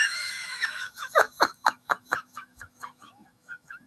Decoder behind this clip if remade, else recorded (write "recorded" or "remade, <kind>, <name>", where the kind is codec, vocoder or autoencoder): remade, autoencoder, DAC-VAE